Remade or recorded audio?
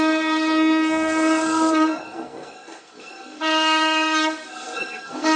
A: remade